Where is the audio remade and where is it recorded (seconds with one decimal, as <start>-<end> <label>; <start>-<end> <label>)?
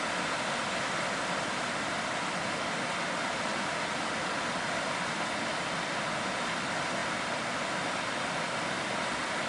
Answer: 0.0-9.5 recorded